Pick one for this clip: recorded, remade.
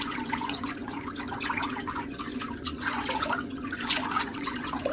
remade